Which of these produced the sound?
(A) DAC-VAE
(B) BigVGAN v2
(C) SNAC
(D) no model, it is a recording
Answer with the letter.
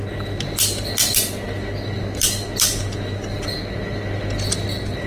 D